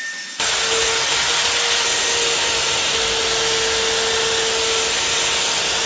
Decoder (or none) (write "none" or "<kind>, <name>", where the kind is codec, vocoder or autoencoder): none